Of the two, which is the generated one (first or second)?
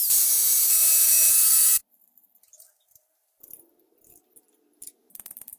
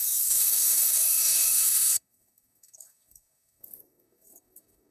second